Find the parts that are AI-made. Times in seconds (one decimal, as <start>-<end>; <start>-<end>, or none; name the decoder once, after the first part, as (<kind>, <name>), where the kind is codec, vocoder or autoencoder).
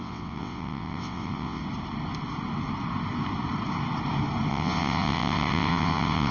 0.0-1.6 (vocoder, WaveNeXt); 4.5-6.3